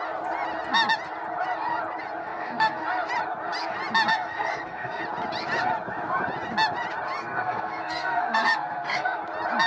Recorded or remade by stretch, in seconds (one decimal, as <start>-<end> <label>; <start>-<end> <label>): 0.0-2.2 recorded; 2.2-2.8 remade; 2.8-4.1 recorded; 4.1-5.0 remade; 5.0-7.2 recorded; 7.2-9.2 remade; 9.2-9.7 recorded